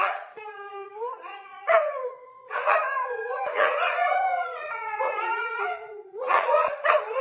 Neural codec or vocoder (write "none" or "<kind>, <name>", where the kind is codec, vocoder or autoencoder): vocoder, Vocos